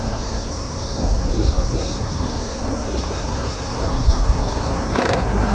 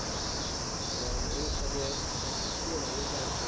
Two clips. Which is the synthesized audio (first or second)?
first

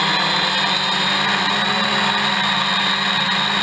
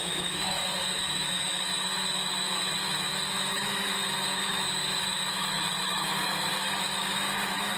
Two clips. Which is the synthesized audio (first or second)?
second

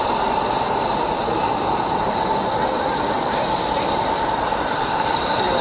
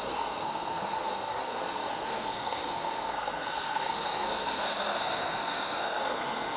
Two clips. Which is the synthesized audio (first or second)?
second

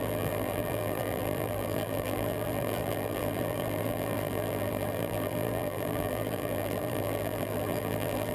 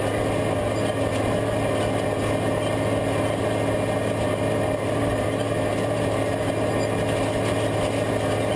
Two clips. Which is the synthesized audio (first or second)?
first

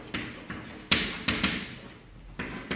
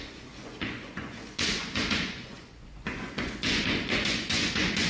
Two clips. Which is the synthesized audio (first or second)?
second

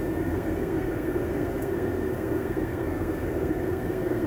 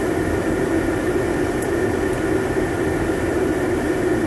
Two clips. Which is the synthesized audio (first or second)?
first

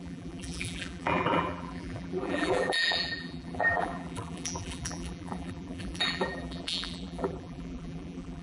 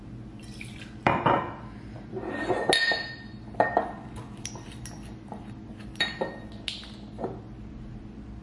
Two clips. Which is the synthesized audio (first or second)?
first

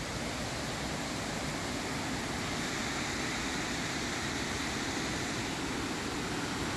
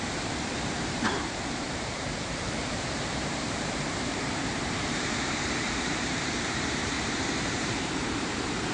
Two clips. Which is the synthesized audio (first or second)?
second